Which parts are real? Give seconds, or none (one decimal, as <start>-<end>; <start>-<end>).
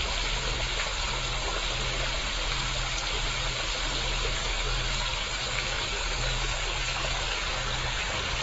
0.0-4.4; 8.0-8.4